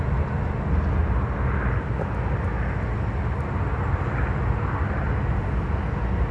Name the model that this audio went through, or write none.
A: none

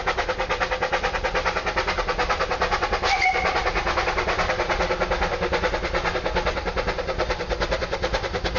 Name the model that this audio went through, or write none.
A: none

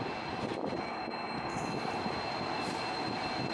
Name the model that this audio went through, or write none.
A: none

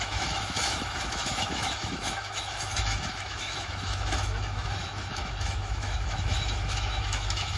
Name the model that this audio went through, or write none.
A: autoencoder, DAC-VAE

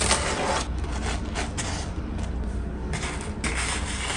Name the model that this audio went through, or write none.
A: none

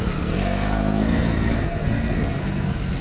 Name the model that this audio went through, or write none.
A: codec, SNAC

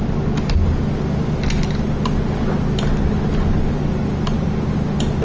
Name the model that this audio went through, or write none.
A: none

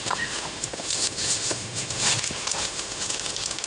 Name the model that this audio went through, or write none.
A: autoencoder, DAC-VAE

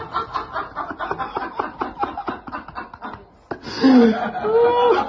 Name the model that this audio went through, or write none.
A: none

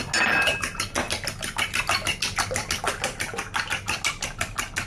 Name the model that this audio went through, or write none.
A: none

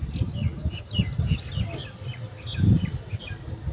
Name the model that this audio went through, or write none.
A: none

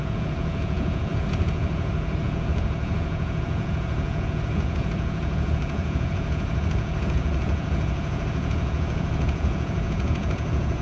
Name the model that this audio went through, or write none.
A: vocoder, Vocos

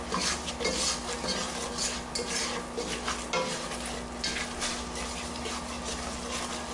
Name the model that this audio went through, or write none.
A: none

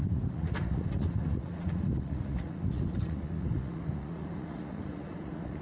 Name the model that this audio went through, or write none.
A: vocoder, Vocos